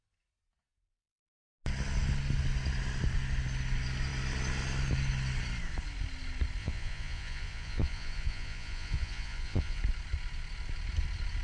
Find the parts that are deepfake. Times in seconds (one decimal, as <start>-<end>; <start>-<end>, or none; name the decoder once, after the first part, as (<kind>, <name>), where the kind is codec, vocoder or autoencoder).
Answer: 6.6-9.8 (vocoder, Vocos)